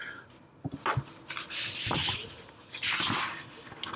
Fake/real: real